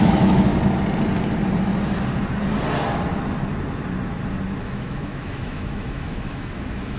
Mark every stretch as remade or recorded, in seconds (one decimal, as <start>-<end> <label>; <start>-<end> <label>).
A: 0.0-0.5 remade; 0.5-4.6 recorded; 4.6-7.0 remade